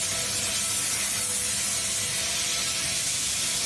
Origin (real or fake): real